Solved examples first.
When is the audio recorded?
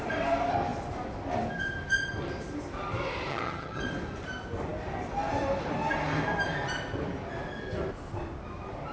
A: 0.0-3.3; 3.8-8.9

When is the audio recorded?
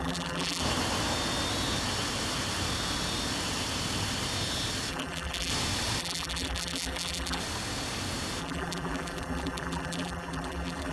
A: 0.6-4.9; 5.5-6.0; 7.4-8.4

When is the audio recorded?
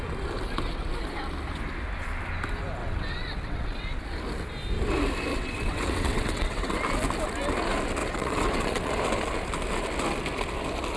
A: 0.0-2.8; 4.0-5.3; 6.7-8.0; 8.9-11.0